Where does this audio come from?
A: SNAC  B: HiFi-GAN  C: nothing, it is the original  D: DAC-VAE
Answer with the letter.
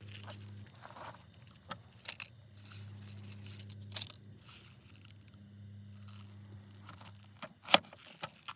C